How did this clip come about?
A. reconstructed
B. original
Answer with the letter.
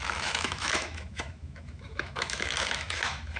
A